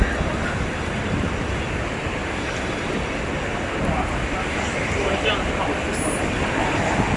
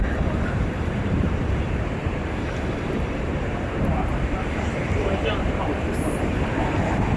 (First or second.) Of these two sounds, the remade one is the second